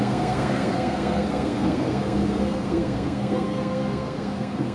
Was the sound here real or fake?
fake